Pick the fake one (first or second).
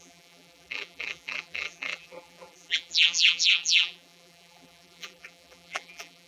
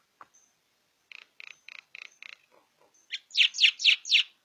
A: first